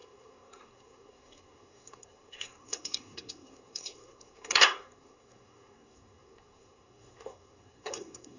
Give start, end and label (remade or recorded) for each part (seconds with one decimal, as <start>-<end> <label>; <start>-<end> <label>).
0.0-8.4 remade